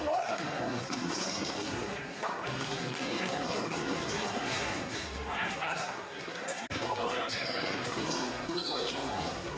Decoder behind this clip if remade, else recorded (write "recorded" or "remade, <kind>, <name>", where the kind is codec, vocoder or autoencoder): remade, codec, SNAC